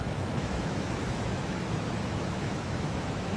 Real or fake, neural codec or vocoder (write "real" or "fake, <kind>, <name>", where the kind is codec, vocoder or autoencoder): fake, autoencoder, DAC-VAE